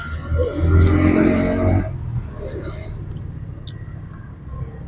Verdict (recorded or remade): recorded